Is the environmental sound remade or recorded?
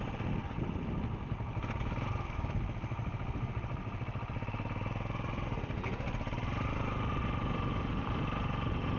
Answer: recorded